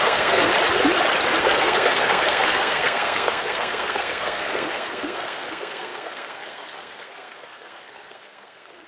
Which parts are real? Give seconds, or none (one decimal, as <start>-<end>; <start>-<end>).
0.5-1.4